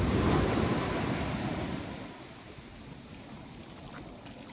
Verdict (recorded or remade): recorded